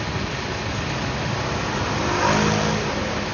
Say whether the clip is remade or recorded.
recorded